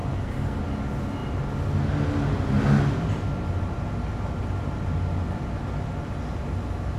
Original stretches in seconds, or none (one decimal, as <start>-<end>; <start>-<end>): 0.6-7.0